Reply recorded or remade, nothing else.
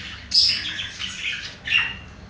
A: recorded